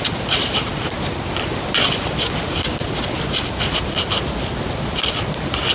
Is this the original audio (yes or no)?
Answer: yes